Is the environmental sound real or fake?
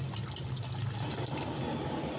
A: real